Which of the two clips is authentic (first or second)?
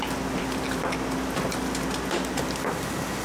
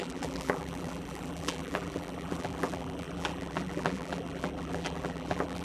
first